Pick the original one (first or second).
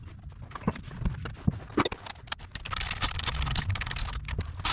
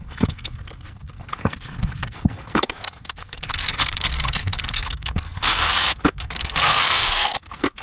first